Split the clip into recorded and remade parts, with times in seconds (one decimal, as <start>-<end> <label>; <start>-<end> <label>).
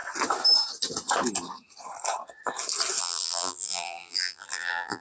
0.0-3.0 recorded; 3.0-5.0 remade